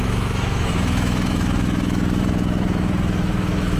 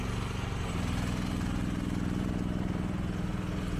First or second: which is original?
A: second